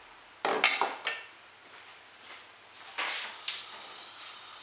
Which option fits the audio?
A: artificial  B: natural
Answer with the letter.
B